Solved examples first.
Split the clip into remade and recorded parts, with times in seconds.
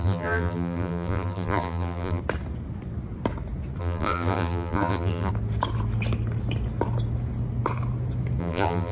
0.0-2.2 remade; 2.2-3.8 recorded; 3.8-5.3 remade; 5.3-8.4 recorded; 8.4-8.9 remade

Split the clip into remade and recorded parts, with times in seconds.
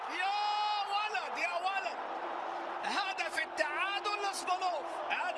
0.0-0.8 recorded; 0.8-3.4 remade; 3.4-5.4 recorded